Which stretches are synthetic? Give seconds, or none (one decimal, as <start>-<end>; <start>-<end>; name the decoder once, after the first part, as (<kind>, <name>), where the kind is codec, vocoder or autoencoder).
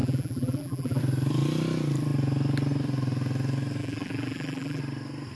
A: 0.0-1.0 (vocoder, BigVGAN v2); 3.8-4.8